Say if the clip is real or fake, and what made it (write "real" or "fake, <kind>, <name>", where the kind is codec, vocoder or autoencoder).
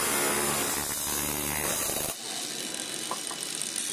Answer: real